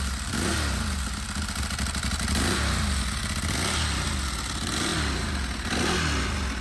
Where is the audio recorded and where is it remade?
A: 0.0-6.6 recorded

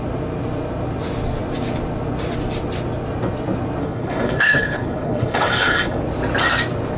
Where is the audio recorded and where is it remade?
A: 0.0-3.8 recorded; 3.8-6.0 remade; 6.0-7.0 recorded

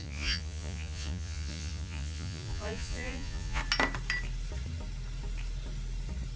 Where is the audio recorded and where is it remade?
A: 0.0-3.6 remade; 3.6-6.4 recorded

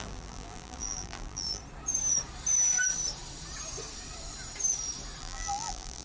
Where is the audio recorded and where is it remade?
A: 0.0-1.6 remade; 1.6-5.2 recorded; 5.2-6.0 remade

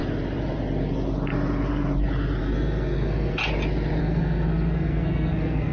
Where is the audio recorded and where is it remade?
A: 0.0-2.4 recorded; 2.4-3.4 remade; 3.4-4.0 recorded; 4.0-5.7 remade